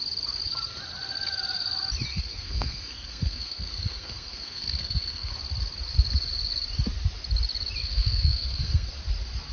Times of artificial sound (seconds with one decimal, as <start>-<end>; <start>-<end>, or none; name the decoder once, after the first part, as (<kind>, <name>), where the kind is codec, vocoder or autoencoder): 2.1-5.3 (codec, SNAC); 7.8-8.9